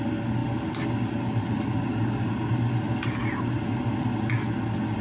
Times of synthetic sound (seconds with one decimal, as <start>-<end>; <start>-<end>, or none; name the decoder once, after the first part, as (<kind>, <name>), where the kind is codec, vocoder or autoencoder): none